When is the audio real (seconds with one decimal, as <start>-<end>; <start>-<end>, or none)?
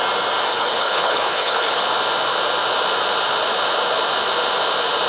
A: 0.0-0.5; 1.8-5.1